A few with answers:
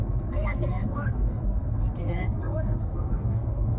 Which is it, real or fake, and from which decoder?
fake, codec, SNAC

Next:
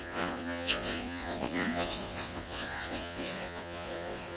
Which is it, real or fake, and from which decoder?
fake, vocoder, Vocos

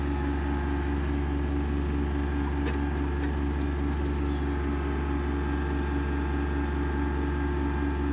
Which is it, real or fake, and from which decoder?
real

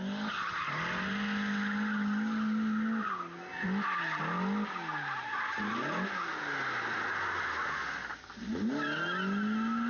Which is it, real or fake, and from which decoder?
real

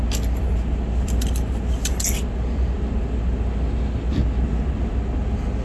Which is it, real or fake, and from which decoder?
real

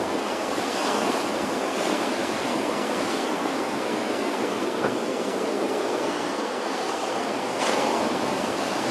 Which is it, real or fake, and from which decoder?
fake, codec, SNAC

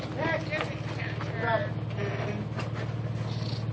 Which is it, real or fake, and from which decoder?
real